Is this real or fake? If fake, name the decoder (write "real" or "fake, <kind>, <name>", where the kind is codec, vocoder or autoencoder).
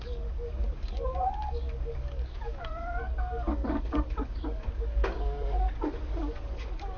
fake, codec, DAC